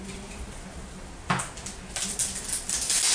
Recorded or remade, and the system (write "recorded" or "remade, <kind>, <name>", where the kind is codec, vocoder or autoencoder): recorded